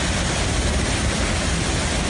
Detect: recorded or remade recorded